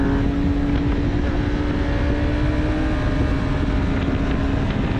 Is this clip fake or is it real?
real